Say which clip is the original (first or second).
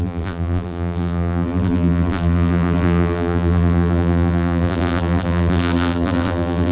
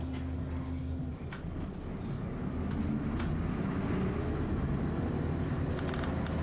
second